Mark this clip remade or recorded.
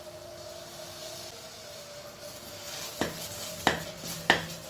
recorded